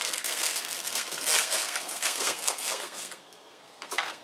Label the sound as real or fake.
fake